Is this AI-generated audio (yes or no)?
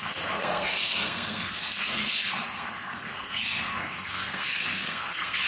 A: yes